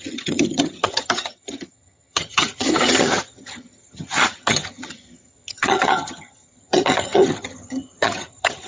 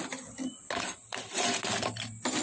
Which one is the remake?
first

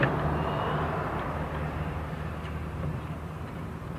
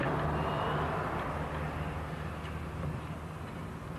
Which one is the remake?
first